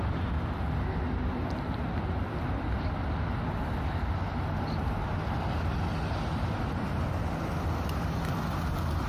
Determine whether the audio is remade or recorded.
recorded